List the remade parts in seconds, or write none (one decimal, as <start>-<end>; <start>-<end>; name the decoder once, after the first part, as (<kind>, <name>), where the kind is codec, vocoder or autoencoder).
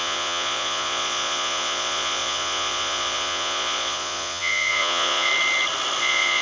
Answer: 0.0-5.3 (vocoder, Vocos); 6.0-6.4